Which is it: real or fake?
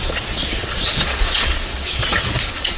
fake